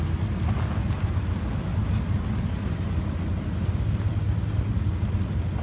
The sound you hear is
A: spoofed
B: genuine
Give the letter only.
B